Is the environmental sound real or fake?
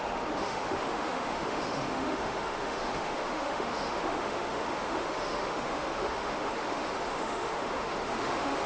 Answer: fake